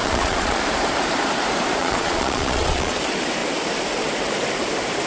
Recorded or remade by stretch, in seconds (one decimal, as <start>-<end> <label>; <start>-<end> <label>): 0.0-0.6 remade; 0.6-1.8 recorded; 1.8-3.0 remade; 3.0-5.1 recorded